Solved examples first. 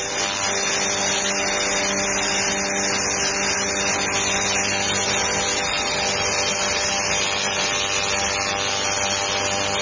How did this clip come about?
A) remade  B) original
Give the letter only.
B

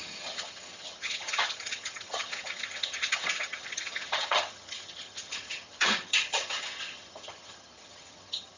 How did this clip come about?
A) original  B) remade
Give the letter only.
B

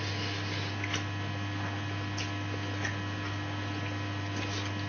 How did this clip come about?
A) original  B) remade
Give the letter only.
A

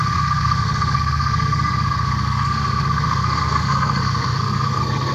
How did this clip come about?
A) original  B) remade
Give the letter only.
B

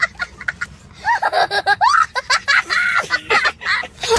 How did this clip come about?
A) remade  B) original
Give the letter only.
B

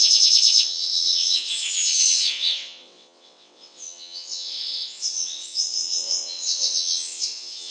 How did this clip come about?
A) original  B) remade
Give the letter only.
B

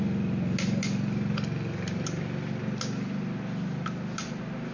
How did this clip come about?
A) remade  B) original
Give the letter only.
B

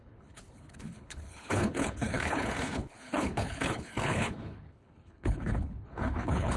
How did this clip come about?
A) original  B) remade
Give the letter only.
B